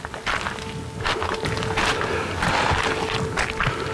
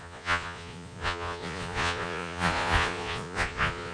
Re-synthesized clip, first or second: second